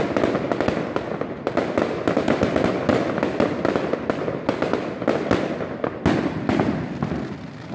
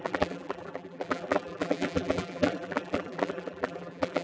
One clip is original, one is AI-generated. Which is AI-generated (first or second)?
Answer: second